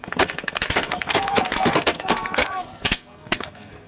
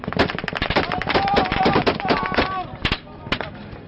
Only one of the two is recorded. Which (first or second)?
second